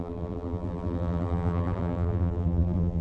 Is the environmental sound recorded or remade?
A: remade